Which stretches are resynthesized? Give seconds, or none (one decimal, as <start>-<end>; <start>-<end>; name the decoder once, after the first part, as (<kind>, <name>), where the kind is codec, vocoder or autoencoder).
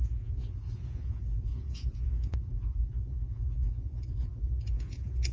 0.0-5.3 (vocoder, Vocos)